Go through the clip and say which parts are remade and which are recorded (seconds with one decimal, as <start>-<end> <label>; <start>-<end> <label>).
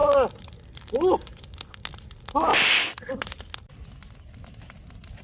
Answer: 0.0-2.5 recorded; 2.5-3.2 remade; 3.2-5.2 recorded